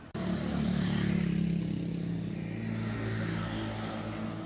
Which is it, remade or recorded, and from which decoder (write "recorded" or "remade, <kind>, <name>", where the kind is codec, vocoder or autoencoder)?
recorded